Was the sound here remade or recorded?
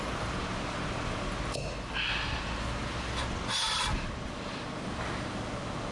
recorded